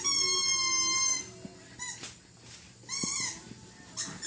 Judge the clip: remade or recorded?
recorded